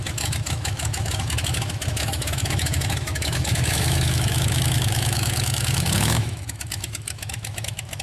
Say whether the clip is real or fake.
fake